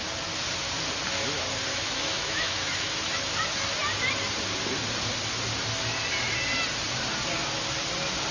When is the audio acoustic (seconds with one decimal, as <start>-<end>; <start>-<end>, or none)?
0.0-1.7; 3.1-8.3